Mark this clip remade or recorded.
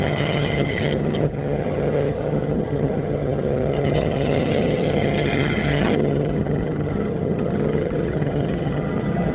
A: remade